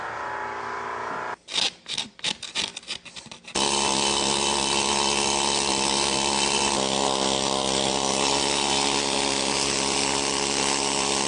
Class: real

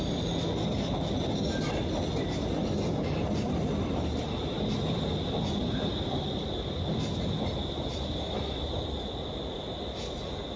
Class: real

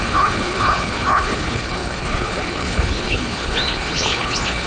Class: fake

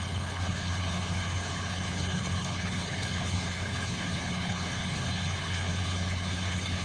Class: fake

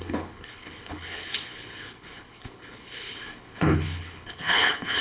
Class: fake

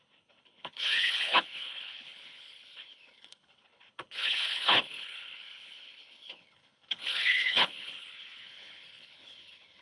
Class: fake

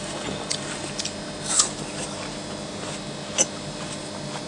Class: real